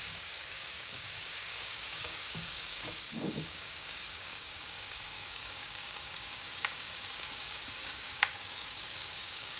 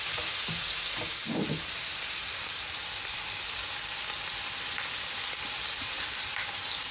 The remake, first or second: first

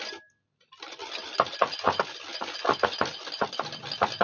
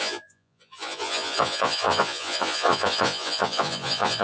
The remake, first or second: second